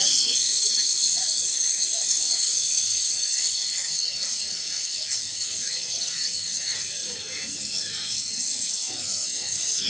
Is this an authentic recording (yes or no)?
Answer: no